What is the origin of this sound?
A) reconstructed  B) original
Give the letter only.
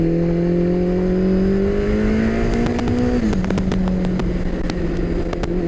B